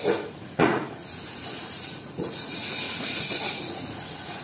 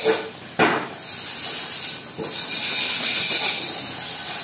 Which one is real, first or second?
second